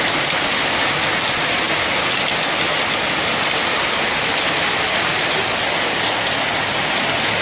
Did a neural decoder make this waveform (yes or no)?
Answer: no